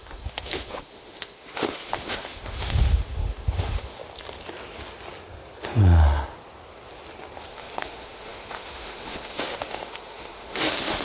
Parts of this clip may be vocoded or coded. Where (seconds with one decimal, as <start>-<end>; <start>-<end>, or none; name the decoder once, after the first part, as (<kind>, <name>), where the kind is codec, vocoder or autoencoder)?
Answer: 0.0-4.0 (autoencoder, DAC-VAE); 7.5-11.0